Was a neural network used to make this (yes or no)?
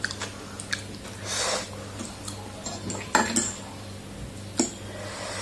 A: no